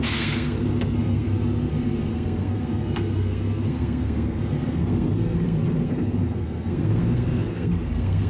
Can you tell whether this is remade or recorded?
remade